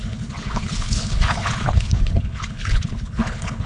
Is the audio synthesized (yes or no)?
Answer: yes